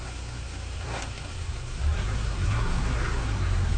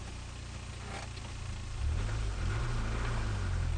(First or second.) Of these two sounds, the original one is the second